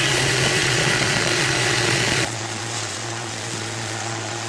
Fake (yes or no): yes